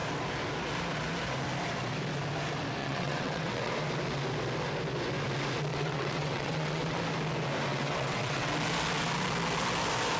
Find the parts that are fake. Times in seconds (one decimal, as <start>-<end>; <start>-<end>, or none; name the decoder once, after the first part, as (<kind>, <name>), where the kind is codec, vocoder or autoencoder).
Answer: 2.8-3.7 (vocoder, WaveNeXt); 5.7-7.0; 7.7-8.5